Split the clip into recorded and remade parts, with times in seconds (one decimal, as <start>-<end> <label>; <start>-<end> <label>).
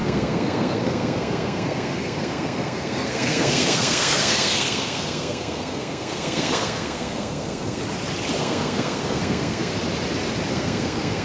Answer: 0.0-7.8 remade; 7.8-8.4 recorded; 8.4-9.7 remade; 9.7-10.5 recorded; 10.5-11.2 remade